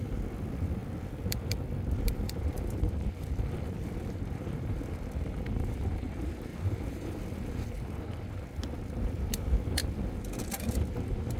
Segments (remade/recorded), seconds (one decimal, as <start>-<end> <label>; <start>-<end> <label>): 0.0-0.8 recorded; 0.8-5.8 remade; 5.8-6.5 recorded; 6.5-7.7 remade; 7.7-11.4 recorded